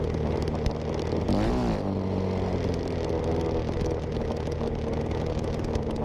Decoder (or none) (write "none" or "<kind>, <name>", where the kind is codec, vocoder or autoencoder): none